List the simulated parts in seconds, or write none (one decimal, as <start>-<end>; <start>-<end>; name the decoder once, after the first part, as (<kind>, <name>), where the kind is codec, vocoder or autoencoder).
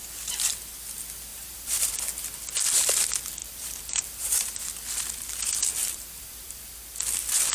1.3-1.9 (vocoder, BigVGAN v2); 3.4-4.6; 5.8-6.7